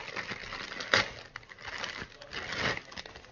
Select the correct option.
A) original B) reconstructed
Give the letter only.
A